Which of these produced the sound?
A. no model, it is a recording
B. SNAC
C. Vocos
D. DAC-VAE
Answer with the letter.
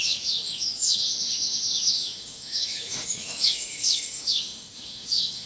D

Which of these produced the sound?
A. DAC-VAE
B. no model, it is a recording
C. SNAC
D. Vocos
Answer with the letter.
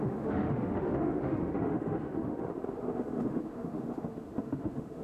A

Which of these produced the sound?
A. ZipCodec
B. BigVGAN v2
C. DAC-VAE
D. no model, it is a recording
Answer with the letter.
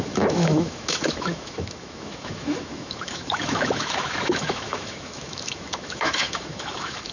C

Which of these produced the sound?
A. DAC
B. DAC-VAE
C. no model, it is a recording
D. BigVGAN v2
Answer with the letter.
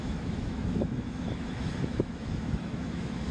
B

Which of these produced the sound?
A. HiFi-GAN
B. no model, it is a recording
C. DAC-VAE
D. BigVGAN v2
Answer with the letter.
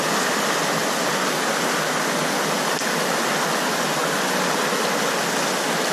B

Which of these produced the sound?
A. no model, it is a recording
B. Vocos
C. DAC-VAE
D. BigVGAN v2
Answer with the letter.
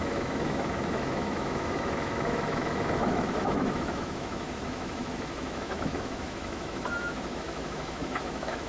C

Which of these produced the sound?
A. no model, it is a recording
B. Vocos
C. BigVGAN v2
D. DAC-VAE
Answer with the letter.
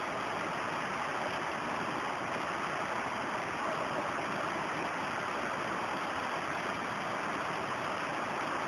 A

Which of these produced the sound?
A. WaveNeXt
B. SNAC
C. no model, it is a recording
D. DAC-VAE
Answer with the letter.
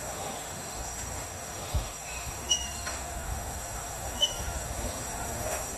D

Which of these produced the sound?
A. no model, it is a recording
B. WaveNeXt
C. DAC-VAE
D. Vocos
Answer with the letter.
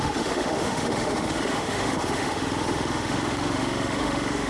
C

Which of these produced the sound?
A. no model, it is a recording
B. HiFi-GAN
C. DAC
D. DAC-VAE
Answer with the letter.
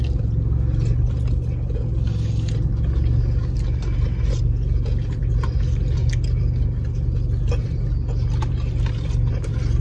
A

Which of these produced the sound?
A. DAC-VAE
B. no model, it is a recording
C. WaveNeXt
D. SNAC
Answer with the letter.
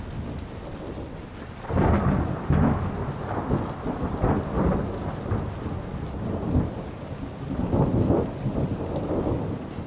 B